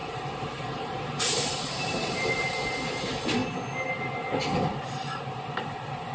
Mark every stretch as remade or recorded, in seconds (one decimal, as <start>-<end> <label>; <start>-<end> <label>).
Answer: 0.0-2.4 remade; 2.4-6.1 recorded